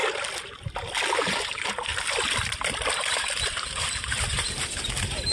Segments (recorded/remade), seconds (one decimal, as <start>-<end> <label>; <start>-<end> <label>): 0.0-1.1 recorded; 1.1-1.9 remade; 1.9-2.9 recorded; 2.9-5.3 remade